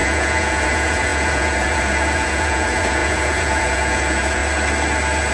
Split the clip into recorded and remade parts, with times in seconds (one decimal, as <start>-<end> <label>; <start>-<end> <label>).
0.0-4.4 remade; 4.4-5.3 recorded